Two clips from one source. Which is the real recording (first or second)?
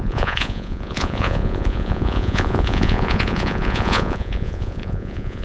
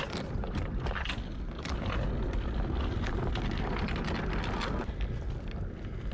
second